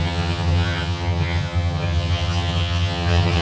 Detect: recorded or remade remade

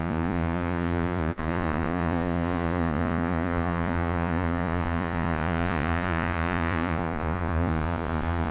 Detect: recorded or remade remade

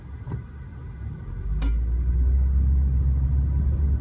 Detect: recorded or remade recorded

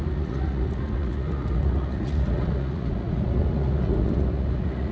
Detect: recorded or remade remade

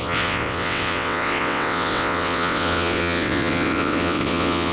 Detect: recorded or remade remade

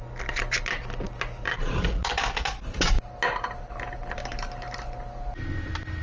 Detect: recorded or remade recorded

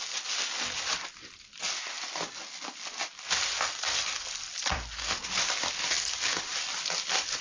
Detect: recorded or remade recorded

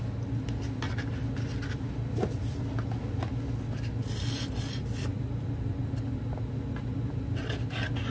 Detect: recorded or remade recorded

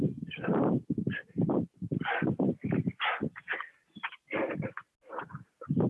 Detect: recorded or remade recorded